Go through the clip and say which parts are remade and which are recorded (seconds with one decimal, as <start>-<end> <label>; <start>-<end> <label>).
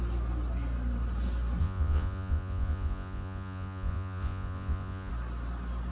0.0-1.6 recorded; 1.6-5.1 remade; 5.1-5.9 recorded